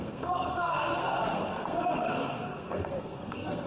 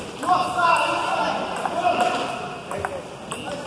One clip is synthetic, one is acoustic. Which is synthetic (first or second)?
first